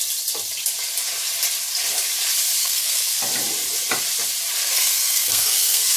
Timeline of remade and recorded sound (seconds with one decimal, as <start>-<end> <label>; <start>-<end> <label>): 0.0-2.6 recorded; 2.6-3.2 remade; 3.2-4.6 recorded; 4.6-6.0 remade